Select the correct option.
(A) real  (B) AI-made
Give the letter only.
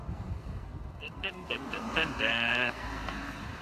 B